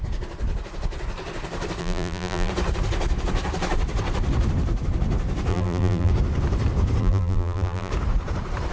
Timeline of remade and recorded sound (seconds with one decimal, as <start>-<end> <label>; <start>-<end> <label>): 0.0-1.8 recorded; 1.8-2.5 remade; 2.5-5.5 recorded; 5.5-6.1 remade; 6.1-7.0 recorded; 7.0-7.9 remade; 7.9-8.7 recorded